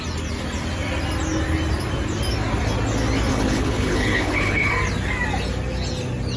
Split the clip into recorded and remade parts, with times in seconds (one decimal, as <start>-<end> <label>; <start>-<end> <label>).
0.0-3.3 recorded; 3.3-4.7 remade; 4.7-6.4 recorded